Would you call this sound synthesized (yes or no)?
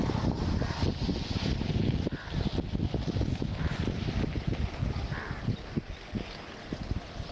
no